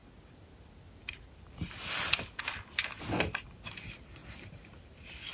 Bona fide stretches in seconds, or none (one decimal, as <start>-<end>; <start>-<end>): 0.0-3.2